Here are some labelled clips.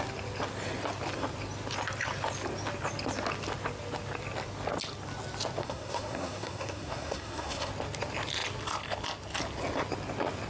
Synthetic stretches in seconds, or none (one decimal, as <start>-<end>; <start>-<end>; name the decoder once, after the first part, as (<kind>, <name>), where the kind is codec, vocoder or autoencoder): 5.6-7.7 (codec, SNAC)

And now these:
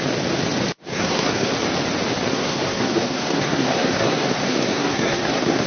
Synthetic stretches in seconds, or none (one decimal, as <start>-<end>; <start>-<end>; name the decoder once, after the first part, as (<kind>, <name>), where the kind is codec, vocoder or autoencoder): 0.9-1.5 (codec, SNAC); 2.3-5.7

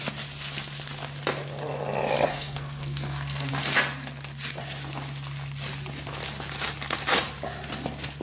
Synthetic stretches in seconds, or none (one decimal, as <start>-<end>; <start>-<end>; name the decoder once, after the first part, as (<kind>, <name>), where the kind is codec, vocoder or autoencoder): 2.3-3.5 (codec, SNAC)

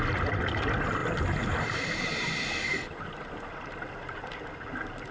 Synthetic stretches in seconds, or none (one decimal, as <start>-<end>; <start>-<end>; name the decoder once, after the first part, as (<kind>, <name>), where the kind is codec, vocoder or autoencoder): none

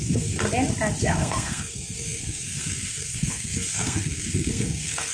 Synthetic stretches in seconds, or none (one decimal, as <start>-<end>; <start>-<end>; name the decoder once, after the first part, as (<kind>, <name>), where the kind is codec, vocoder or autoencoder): 0.0-0.4 (codec, SNAC); 1.0-5.1